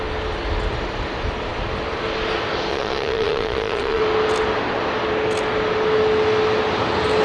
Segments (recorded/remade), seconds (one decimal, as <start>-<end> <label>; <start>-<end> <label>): 0.0-2.7 recorded; 2.7-4.0 remade; 4.0-7.2 recorded